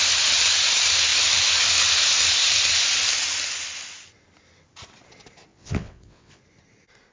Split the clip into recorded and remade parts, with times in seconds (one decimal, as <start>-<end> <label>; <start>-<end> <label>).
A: 0.0-5.5 recorded; 5.5-6.4 remade; 6.4-7.1 recorded